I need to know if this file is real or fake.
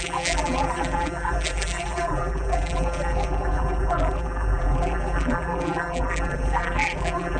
fake